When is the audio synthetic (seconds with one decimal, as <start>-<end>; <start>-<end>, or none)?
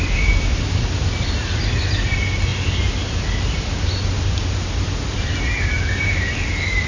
none